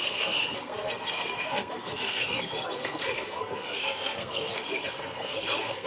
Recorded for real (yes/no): no